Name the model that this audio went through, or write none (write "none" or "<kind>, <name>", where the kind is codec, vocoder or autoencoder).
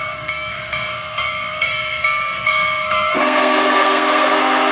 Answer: codec, SNAC